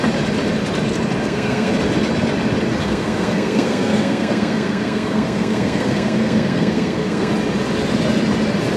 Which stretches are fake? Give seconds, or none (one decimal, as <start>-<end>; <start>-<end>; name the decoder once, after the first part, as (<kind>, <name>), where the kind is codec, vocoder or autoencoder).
1.2-1.7 (codec, SNAC); 2.8-7.3